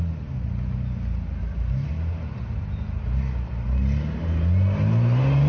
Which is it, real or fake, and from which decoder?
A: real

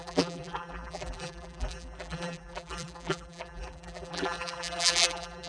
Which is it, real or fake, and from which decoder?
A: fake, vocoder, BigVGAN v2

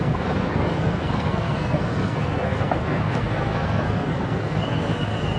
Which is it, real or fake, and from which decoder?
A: fake, codec, SNAC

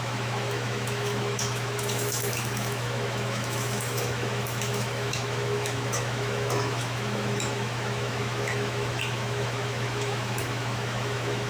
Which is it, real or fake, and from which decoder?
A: fake, autoencoder, DAC-VAE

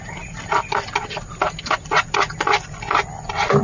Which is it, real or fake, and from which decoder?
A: real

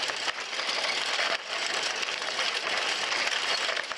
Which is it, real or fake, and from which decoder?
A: real